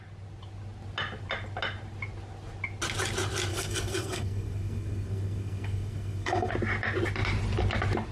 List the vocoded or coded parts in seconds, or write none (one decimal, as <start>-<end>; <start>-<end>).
3.5-6.5